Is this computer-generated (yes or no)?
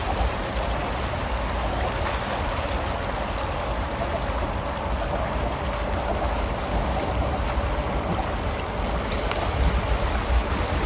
no